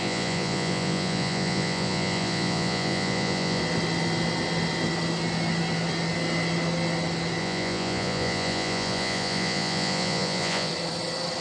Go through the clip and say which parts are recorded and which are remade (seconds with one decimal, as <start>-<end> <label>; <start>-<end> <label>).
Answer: 0.0-3.6 remade; 3.6-7.4 recorded; 7.4-10.7 remade; 10.7-11.4 recorded